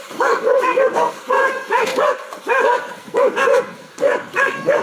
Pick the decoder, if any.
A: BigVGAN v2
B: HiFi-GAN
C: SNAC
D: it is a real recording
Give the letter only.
C